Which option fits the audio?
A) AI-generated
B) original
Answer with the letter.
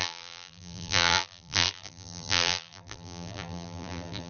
A